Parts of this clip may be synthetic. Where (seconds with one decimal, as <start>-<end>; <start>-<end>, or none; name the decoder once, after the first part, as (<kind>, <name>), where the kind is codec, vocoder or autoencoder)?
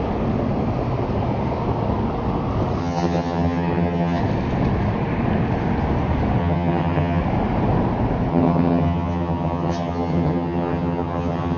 2.8-4.2 (vocoder, HiFi-GAN); 6.4-7.2; 8.3-11.6